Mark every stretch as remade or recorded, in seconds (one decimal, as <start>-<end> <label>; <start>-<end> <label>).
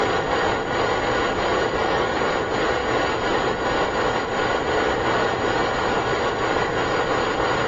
0.0-1.8 recorded; 1.8-2.3 remade; 2.3-7.7 recorded